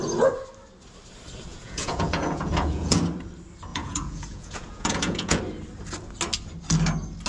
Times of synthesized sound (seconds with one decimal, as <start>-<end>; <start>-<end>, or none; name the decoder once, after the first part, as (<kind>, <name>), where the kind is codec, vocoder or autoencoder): 1.5-3.0 (vocoder, Vocos); 3.7-5.4

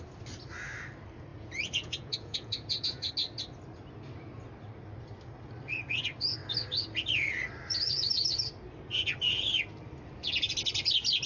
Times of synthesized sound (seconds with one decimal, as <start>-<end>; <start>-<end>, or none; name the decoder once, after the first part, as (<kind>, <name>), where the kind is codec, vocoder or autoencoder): 1.3-3.1 (vocoder, Vocos)

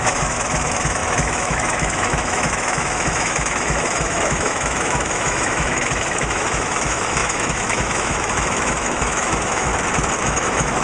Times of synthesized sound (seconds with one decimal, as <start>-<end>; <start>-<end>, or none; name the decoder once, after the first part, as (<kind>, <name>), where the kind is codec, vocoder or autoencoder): 0.0-9.7 (autoencoder, DAC-VAE); 10.2-10.8

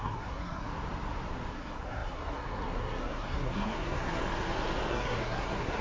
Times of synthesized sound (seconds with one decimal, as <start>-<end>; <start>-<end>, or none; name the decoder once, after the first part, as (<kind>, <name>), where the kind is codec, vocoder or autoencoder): 0.0-0.7 (codec, SNAC); 1.5-4.2; 4.9-5.8

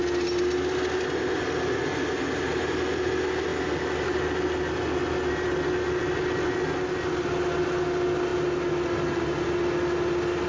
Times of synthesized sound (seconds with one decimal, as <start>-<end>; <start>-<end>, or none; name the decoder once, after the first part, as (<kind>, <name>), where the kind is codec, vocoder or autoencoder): none